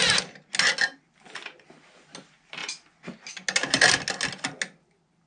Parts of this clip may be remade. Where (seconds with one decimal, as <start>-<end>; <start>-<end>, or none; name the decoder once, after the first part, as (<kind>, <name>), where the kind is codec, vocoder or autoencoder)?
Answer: none